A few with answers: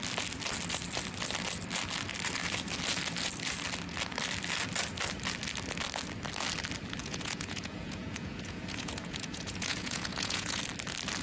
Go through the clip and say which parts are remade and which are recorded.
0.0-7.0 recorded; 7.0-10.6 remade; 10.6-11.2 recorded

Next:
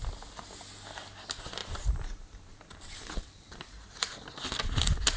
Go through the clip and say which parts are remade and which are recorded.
0.0-1.6 recorded; 1.6-3.5 remade; 3.5-5.2 recorded